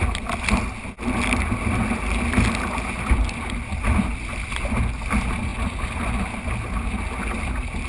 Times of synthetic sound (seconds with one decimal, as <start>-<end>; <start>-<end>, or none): none